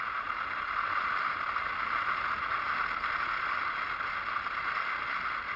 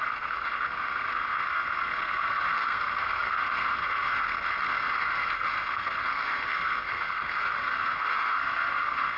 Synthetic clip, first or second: second